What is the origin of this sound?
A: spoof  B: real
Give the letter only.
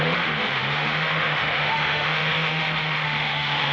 A